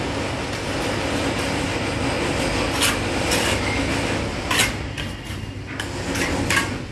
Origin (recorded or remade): recorded